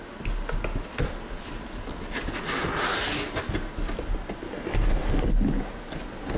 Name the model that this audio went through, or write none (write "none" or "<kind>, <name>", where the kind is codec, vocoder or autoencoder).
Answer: none